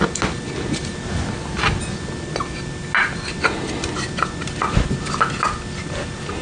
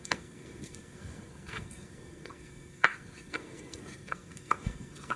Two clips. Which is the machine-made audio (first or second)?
second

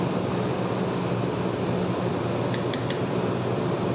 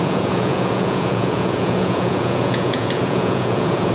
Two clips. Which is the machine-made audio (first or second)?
second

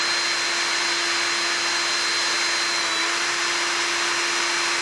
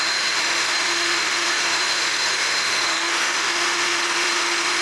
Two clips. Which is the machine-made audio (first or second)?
second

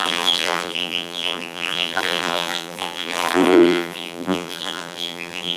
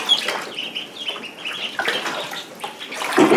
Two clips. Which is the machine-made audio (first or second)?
first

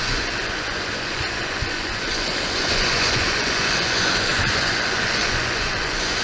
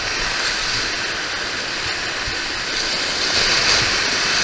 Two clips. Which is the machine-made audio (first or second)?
first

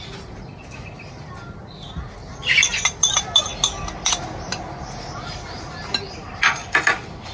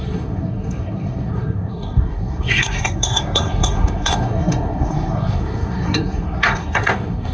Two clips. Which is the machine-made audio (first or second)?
second